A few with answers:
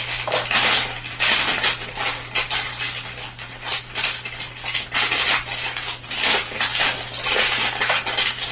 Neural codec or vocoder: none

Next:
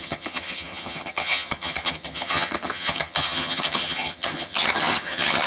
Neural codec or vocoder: vocoder, HiFi-GAN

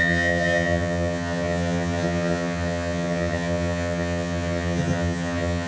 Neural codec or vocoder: vocoder, HiFi-GAN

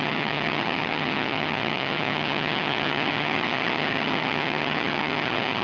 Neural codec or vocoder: vocoder, HiFi-GAN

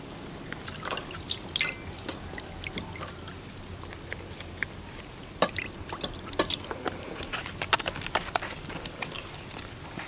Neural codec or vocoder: none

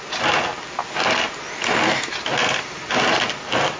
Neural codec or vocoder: none